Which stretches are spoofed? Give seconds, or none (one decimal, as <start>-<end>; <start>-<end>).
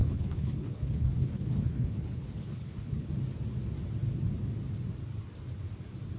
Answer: 0.0-3.1